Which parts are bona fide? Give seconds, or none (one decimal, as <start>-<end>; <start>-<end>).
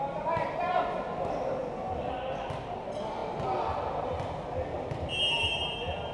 0.0-6.1